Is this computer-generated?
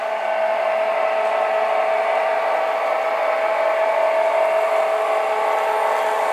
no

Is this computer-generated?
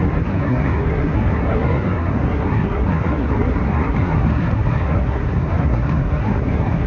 yes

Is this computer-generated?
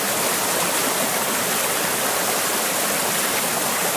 no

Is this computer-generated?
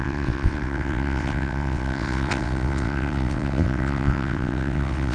yes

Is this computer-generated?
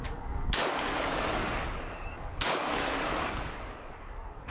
yes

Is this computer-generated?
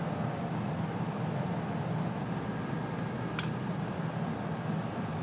no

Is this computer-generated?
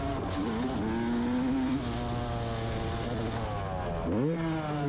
no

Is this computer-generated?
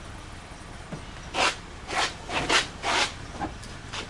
no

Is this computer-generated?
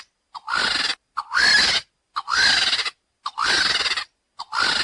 no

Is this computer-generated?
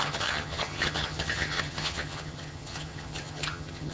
yes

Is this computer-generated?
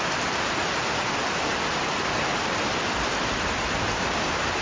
yes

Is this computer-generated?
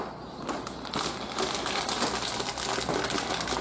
no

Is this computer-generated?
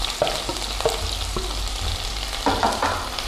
no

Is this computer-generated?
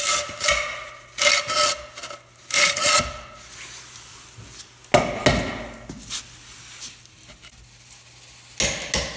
no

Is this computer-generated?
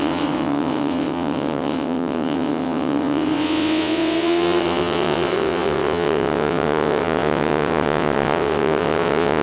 yes